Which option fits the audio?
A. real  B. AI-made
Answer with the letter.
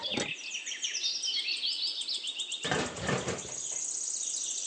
A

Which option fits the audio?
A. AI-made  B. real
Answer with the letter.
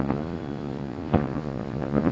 A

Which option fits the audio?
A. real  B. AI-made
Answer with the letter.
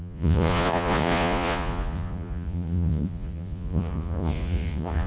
B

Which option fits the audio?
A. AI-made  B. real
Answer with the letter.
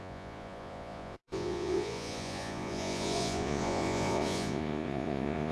A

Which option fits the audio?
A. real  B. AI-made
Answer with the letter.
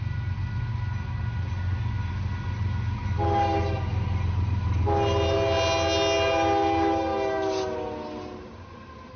A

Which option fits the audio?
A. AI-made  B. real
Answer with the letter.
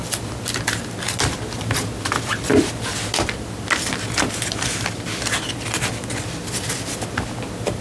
B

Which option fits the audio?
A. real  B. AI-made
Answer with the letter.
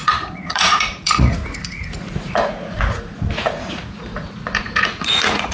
B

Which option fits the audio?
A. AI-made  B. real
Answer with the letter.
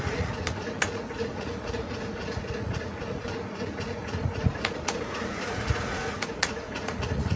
A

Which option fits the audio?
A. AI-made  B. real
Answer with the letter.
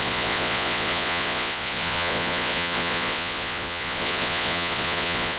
A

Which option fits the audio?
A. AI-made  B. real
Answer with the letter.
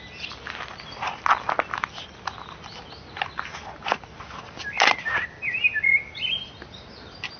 B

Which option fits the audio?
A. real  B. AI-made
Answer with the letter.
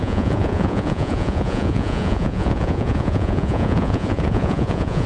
B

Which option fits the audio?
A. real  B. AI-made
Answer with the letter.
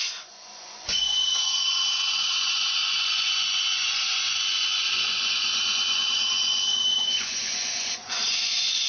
B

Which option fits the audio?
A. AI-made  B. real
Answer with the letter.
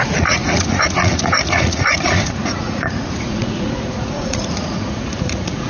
A